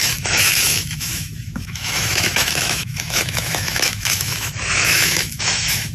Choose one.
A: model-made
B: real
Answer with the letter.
A